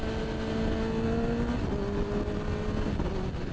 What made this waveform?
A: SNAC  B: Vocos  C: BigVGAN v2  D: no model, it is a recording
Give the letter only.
D